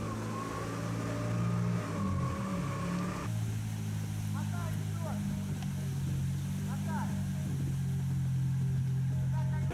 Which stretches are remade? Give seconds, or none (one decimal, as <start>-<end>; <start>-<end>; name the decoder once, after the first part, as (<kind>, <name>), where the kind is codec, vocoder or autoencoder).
none